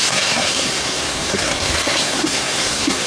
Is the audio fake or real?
fake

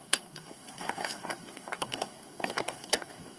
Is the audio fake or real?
fake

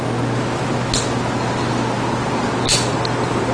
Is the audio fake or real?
real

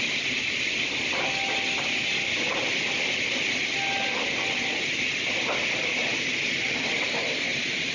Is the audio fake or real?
real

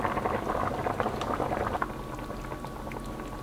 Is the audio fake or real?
real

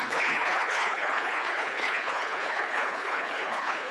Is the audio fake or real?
fake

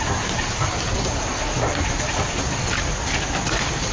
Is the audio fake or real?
real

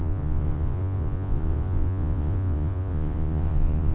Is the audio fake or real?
fake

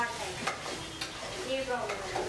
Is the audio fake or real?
real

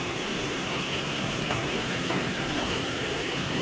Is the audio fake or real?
fake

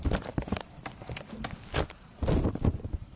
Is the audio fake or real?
real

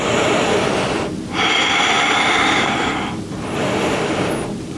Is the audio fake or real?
fake